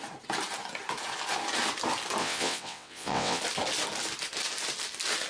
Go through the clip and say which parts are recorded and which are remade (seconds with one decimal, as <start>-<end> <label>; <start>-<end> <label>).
0.0-2.2 recorded; 2.2-3.4 remade; 3.4-5.3 recorded